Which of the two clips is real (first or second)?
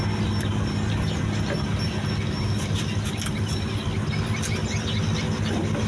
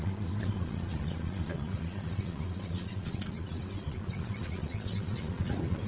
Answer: first